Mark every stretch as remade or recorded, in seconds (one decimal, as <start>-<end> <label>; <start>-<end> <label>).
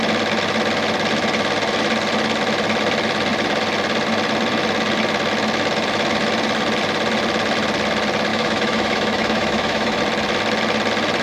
0.0-8.3 recorded; 8.3-10.0 remade; 10.0-11.2 recorded